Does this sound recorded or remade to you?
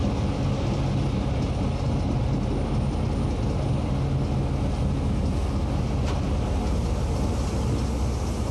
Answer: recorded